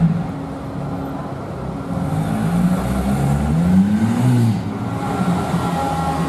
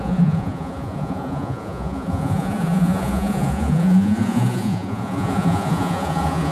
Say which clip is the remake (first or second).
second